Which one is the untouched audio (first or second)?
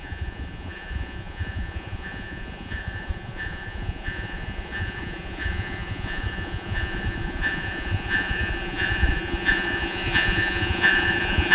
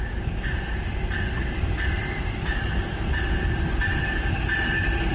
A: second